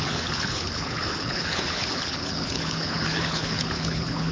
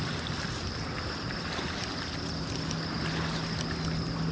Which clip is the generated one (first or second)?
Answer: first